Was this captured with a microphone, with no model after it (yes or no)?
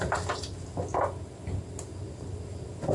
yes